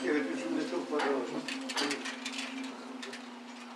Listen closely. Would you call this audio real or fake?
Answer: real